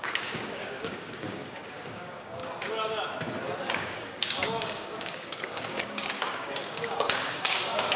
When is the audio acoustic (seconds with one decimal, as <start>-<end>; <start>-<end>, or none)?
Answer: 2.4-3.7

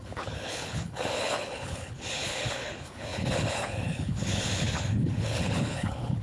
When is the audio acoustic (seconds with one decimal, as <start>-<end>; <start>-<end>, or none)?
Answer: none

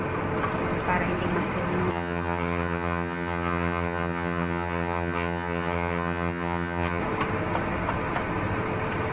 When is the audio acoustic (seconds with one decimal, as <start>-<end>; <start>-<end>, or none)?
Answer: 0.0-1.9; 7.0-9.1

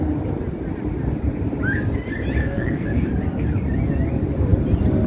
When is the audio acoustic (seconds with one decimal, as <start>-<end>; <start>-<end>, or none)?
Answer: 0.0-2.4; 2.9-5.1

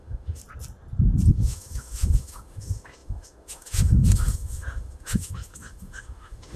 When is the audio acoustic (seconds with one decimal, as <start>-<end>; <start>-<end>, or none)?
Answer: 0.4-1.3

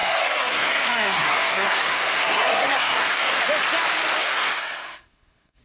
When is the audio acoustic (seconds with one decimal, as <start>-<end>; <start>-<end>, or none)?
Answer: 3.4-4.2

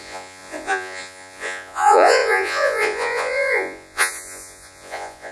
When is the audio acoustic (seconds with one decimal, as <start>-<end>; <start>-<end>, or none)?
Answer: none